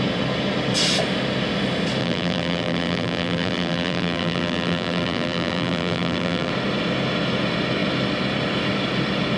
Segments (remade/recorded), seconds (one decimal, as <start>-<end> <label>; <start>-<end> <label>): 0.0-2.0 recorded; 2.0-6.5 remade; 6.5-9.4 recorded